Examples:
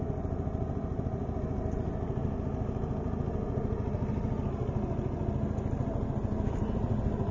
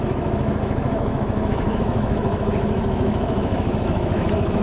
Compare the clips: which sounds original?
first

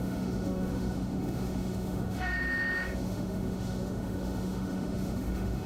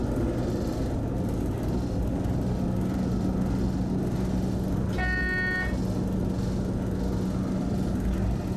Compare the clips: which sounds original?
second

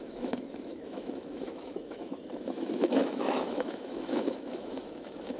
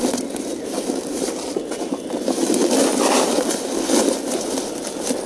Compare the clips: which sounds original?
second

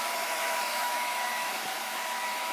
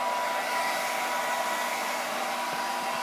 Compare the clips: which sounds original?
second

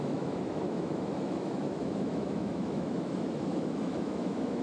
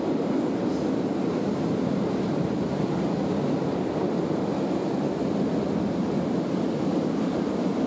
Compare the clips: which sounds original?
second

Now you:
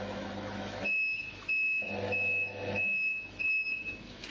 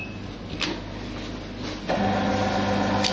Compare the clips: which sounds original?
second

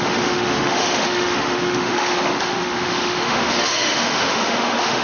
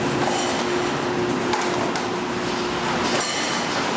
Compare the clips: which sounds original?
second